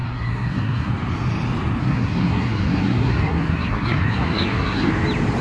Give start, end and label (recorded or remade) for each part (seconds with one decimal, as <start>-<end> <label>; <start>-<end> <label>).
0.0-0.9 remade; 0.9-1.8 recorded; 1.8-4.9 remade; 4.9-5.4 recorded

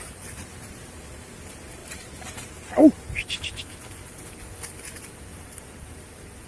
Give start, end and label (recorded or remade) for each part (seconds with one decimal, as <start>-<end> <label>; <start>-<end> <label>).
0.0-1.8 recorded; 1.8-2.5 remade; 2.5-5.3 recorded; 5.3-5.9 remade; 5.9-6.5 recorded

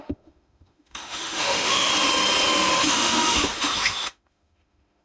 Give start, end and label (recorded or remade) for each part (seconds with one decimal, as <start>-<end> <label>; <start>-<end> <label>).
0.0-1.9 remade; 1.9-2.7 recorded; 2.7-5.0 remade

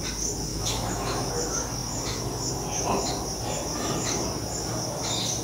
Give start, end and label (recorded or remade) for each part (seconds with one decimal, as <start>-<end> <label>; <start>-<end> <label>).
0.0-0.5 recorded; 0.5-1.3 remade; 1.3-5.4 recorded

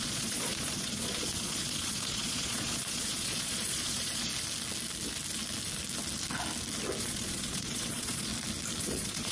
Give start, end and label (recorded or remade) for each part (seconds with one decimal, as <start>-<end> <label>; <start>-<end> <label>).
0.0-4.3 remade; 4.3-7.0 recorded; 7.0-8.3 remade; 8.3-8.8 recorded; 8.8-9.3 remade

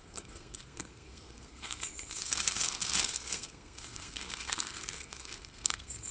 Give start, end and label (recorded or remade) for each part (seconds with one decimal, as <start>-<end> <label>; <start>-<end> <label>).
0.0-6.1 remade